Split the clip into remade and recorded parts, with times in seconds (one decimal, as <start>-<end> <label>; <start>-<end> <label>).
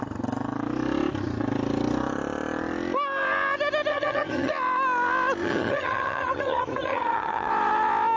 0.0-3.9 recorded; 3.9-4.5 remade; 4.5-5.4 recorded; 5.4-7.5 remade; 7.5-8.2 recorded